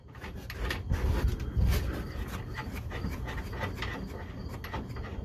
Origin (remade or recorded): recorded